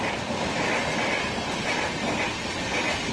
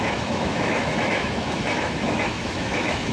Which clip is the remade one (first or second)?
second